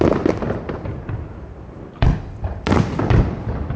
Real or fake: real